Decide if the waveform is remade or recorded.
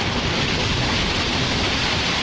recorded